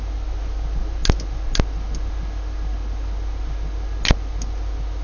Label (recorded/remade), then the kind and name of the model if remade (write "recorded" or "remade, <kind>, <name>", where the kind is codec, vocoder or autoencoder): recorded